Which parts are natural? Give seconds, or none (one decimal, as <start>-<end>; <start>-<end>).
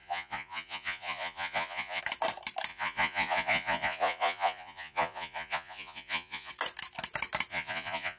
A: 2.0-2.7; 6.5-7.5